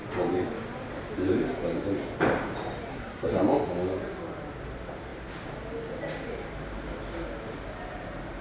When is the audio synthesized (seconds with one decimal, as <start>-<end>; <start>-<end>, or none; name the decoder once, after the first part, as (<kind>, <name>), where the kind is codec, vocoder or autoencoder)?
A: 2.9-3.4 (codec, SNAC)